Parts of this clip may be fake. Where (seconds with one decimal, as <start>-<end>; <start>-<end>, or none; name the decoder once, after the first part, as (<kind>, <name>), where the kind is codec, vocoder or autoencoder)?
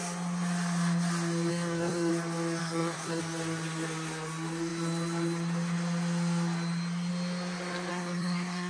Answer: 1.5-2.1 (codec, SNAC); 2.6-3.2; 7.9-8.7